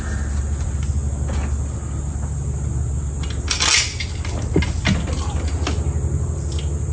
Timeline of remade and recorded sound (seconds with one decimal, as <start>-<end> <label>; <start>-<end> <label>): 0.0-6.9 recorded